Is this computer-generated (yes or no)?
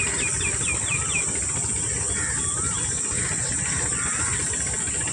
no